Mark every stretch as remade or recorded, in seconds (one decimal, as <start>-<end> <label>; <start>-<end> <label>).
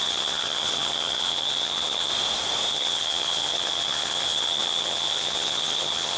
0.0-2.1 remade; 2.1-2.7 recorded; 2.7-6.2 remade